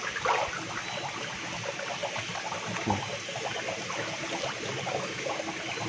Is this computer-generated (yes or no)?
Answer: no